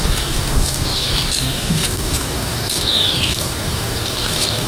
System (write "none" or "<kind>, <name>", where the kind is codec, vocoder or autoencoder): codec, DAC